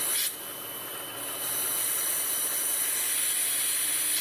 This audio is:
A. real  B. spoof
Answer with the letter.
A